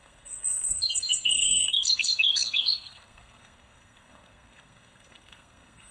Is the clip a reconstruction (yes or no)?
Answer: yes